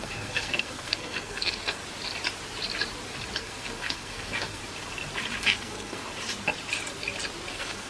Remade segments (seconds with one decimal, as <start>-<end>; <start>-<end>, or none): 0.0-1.8; 3.4-4.6; 5.4-6.0; 7.5-7.9